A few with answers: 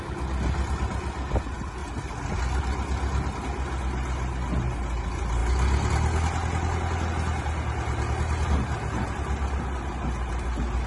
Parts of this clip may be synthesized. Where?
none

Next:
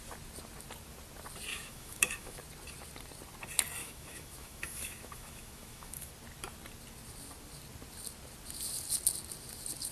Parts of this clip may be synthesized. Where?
1.5-2.4 (autoencoder, DAC-VAE); 3.8-6.1

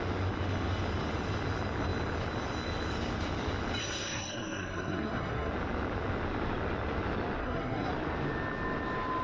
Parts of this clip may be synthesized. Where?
3.8-5.5 (codec, SNAC); 7.4-7.9

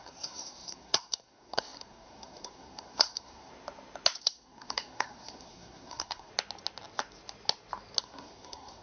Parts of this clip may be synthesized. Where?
0.0-3.5 (codec, SNAC); 4.2-6.3; 8.0-8.8

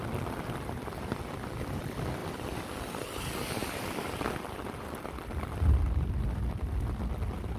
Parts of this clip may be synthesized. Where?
2.2-3.2 (vocoder, BigVGAN v2); 3.6-5.6

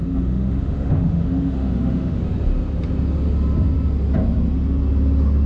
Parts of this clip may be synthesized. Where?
0.0-2.2 (autoencoder, DAC-VAE)

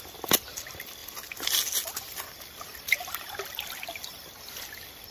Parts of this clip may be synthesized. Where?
none

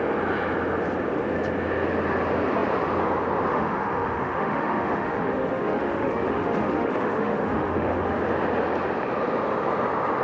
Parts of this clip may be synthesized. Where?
3.5-8.2 (autoencoder, DAC-VAE)